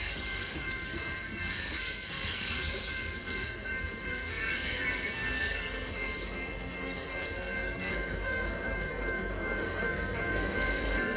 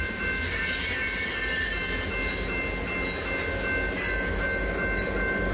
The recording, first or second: second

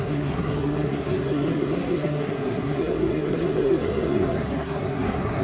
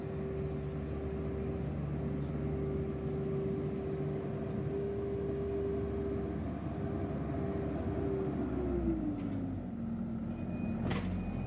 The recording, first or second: second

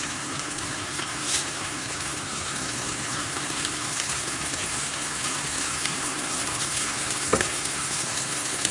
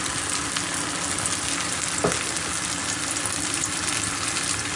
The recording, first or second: second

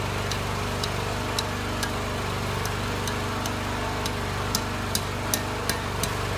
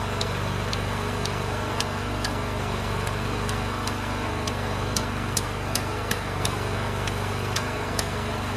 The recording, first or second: first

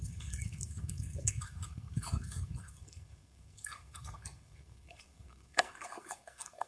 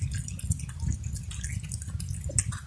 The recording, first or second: second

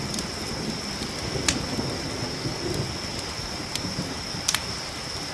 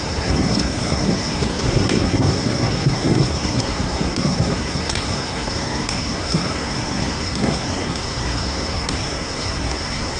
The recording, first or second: first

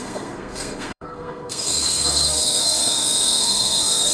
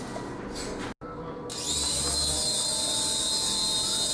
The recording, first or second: second